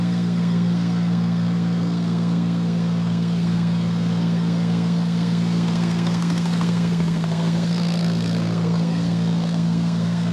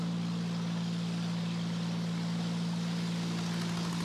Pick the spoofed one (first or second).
first